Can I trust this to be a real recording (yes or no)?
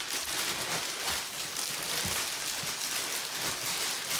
yes